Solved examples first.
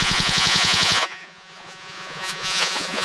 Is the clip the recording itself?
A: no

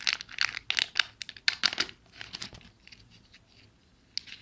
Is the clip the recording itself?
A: yes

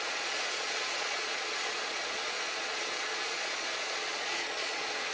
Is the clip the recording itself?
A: no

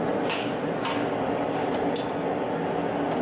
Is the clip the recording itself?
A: yes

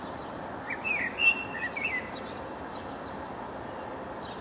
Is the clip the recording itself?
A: yes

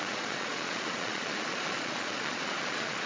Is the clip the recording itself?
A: no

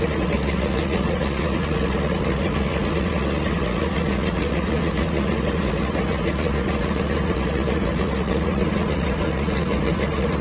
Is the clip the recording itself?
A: no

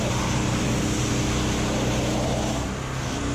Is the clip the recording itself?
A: yes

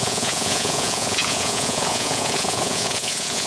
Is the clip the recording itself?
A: no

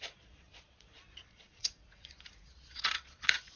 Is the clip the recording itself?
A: no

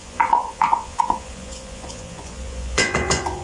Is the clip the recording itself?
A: no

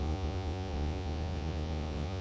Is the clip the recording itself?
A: no